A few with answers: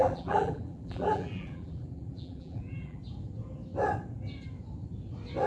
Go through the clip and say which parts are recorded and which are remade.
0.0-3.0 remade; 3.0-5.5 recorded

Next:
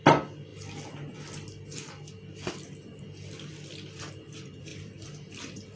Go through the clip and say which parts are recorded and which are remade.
0.0-0.5 remade; 0.5-4.0 recorded; 4.0-5.8 remade

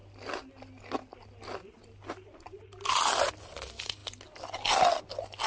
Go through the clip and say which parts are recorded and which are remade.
0.0-5.5 recorded

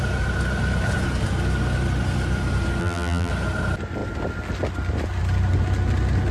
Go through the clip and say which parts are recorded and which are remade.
0.0-2.8 recorded; 2.8-3.3 remade; 3.3-6.3 recorded

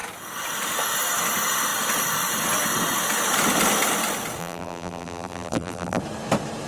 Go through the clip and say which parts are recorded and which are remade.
0.0-4.4 recorded; 4.4-6.0 remade; 6.0-6.7 recorded

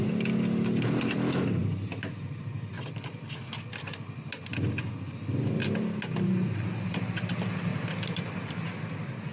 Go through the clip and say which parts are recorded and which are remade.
0.0-7.7 recorded; 7.7-8.5 remade; 8.5-9.3 recorded

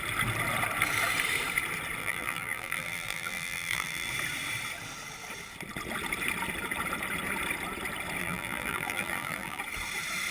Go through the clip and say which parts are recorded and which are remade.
0.0-2.0 recorded; 2.0-4.1 remade; 4.1-8.2 recorded; 8.2-9.6 remade; 9.6-10.3 recorded